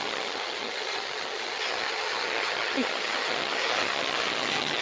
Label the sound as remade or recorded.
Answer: remade